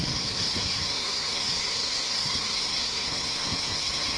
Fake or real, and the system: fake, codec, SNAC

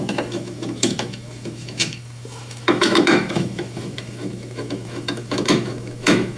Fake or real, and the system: fake, autoencoder, DAC-VAE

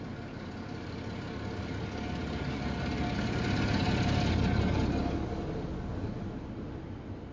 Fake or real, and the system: real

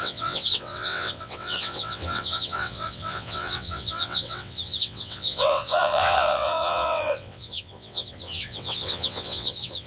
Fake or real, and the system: fake, vocoder, WaveNeXt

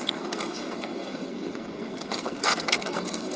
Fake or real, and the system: fake, codec, SNAC